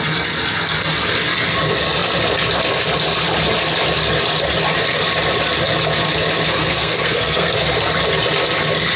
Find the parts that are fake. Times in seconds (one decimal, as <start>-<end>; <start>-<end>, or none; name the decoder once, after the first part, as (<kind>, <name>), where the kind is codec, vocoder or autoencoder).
6.5-7.7 (codec, SNAC)